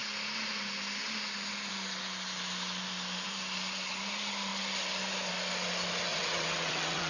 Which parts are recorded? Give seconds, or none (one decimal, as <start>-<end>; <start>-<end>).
0.0-6.1